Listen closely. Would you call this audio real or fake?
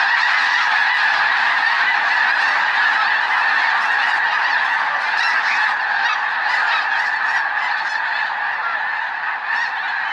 real